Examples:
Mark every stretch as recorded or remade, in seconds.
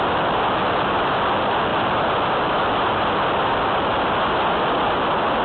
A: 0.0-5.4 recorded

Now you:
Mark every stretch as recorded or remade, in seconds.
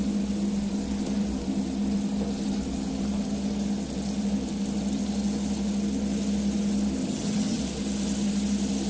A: 0.0-7.0 recorded; 7.0-7.6 remade; 7.6-8.9 recorded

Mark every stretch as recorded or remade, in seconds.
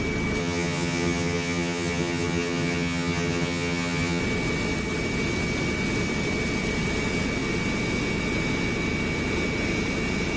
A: 0.0-0.4 recorded; 0.4-4.2 remade; 4.2-10.4 recorded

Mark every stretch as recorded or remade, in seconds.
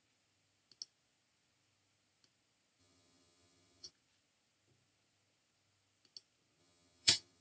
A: 0.0-2.8 recorded; 2.8-3.9 remade; 3.9-6.6 recorded; 6.6-7.4 remade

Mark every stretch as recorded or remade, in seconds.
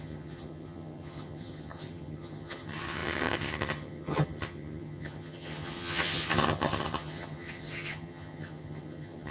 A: 0.0-9.3 remade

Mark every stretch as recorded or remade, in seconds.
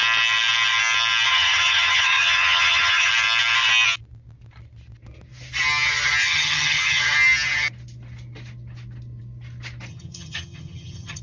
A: 0.0-1.3 recorded; 1.3-3.1 remade; 3.1-6.2 recorded; 6.2-7.0 remade; 7.0-9.9 recorded; 9.9-11.2 remade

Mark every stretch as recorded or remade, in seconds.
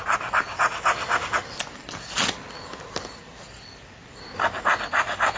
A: 0.0-5.4 recorded